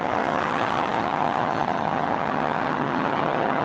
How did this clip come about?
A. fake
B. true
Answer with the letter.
A